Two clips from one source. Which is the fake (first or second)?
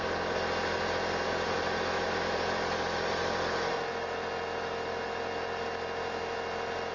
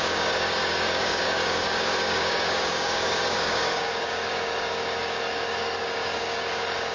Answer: second